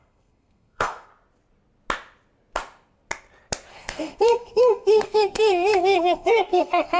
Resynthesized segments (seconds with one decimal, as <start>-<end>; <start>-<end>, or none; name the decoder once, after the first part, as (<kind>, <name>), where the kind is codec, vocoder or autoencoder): 0.0-1.1 (codec, SNAC); 3.7-7.0